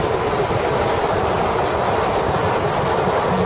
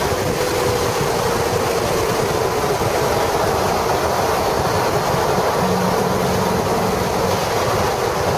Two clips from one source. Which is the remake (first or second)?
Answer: first